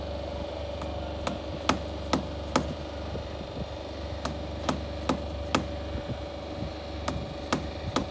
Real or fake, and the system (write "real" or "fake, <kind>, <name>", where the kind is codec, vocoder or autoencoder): real